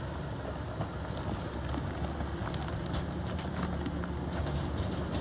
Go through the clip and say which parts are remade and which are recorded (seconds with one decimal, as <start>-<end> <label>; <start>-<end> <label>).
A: 0.0-5.2 recorded